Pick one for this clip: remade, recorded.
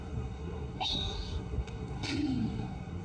remade